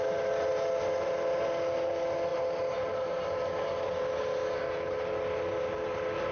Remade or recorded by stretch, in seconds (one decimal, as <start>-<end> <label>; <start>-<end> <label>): 0.0-6.3 recorded